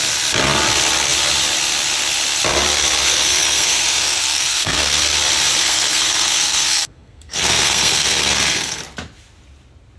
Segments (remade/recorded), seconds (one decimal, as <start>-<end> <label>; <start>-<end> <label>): 0.0-3.0 recorded; 3.0-5.0 remade; 5.0-5.6 recorded; 5.6-8.8 remade; 8.8-10.0 recorded